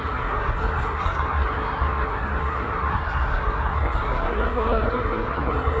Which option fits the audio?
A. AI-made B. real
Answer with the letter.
A